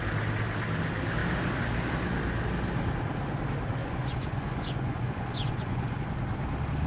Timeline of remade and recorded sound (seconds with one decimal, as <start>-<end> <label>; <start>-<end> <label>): 0.0-3.8 recorded; 3.8-6.0 remade; 6.0-6.9 recorded